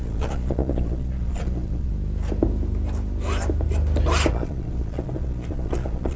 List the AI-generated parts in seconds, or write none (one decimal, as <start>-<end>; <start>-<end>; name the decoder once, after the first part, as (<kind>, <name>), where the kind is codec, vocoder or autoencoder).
0.0-1.9 (vocoder, Vocos); 4.3-6.2